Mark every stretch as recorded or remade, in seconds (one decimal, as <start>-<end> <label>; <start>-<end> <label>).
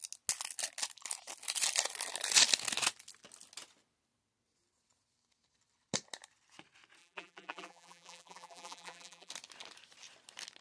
0.0-7.0 recorded; 7.0-9.3 remade; 9.3-10.6 recorded